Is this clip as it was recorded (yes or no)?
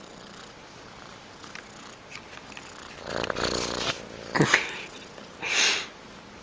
yes